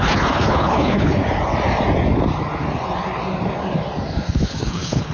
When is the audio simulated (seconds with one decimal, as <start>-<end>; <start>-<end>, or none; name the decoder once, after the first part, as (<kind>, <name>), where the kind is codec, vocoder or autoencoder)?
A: 0.0-1.2 (codec, HILCodec); 4.3-5.1